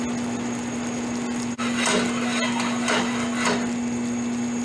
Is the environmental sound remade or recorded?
recorded